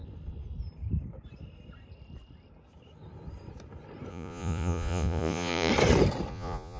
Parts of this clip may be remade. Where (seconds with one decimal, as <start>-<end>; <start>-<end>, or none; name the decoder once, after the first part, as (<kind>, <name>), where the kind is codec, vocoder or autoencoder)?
4.1-5.7 (vocoder, Vocos); 6.3-6.8